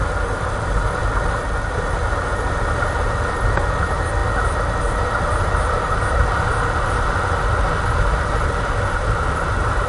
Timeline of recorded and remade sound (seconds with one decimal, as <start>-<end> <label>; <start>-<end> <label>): 0.0-9.9 recorded